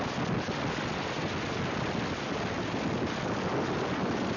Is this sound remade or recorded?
recorded